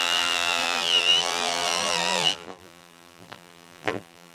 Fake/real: fake